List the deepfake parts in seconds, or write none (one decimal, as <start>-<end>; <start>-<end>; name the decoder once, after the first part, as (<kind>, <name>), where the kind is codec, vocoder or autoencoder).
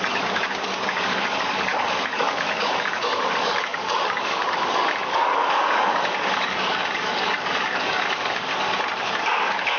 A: 0.0-8.5 (codec, DAC); 9.2-9.8